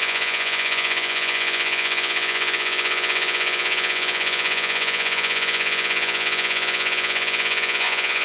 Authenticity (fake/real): fake